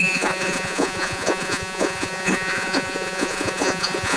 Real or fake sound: fake